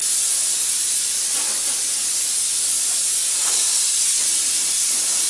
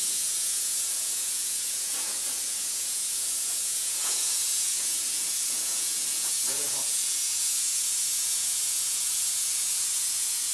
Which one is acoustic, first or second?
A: first